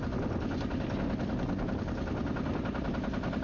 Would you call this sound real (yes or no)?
yes